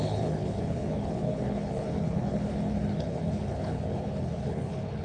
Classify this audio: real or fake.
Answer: fake